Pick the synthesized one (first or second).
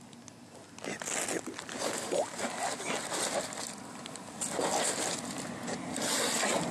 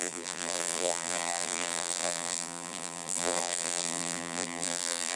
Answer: second